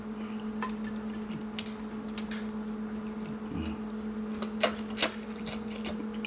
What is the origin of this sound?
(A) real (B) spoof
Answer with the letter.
A